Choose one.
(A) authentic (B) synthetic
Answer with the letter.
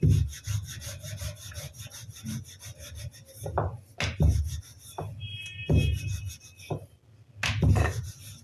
A